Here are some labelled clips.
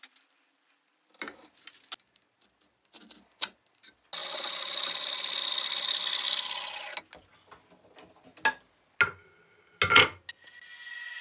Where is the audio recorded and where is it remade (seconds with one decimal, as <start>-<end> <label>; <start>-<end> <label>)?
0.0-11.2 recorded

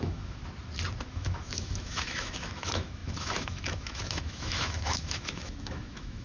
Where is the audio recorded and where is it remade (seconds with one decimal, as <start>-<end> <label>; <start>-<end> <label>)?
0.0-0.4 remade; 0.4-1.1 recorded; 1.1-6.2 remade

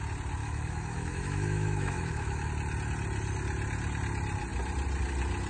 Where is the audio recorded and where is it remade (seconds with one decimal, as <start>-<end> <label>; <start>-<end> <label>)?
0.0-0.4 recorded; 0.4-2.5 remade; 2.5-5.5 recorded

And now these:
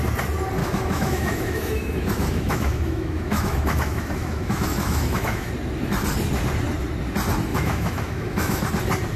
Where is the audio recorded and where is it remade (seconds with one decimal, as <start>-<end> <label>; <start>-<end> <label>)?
0.0-0.6 recorded; 0.6-5.5 remade; 5.5-7.5 recorded; 7.5-8.6 remade; 8.6-9.2 recorded

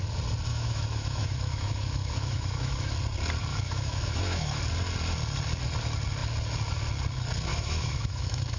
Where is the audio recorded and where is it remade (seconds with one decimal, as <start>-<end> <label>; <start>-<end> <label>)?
0.0-0.5 recorded; 0.5-2.9 remade; 2.9-3.5 recorded; 3.5-4.6 remade; 4.6-7.5 recorded; 7.5-8.6 remade